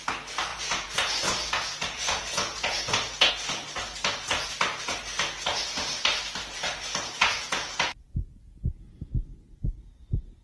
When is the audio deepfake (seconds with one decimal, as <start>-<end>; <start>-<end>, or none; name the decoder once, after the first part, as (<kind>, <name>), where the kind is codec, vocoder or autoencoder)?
0.5-3.3 (vocoder, Vocos); 7.2-9.1